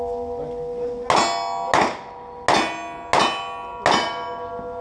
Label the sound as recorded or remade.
recorded